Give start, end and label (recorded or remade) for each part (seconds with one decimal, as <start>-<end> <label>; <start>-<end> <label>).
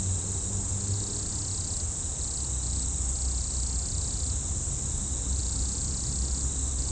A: 0.0-5.4 recorded; 5.4-6.1 remade; 6.1-6.9 recorded